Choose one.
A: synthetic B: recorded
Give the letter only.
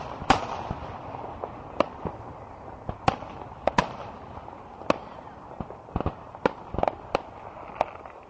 B